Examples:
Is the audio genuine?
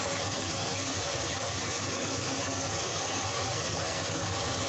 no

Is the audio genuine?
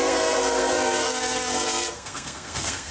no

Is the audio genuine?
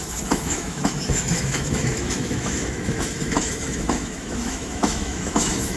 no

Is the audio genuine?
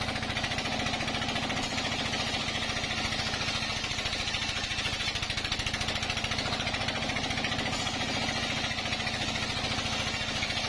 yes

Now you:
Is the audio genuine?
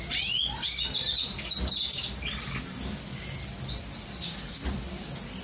yes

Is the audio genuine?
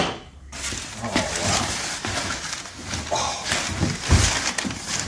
yes